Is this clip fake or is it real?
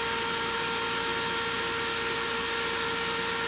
real